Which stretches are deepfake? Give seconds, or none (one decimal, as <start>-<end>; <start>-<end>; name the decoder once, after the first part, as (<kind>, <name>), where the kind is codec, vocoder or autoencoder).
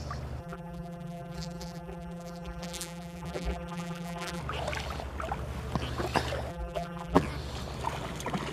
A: 0.4-4.4 (vocoder, BigVGAN v2); 6.5-7.2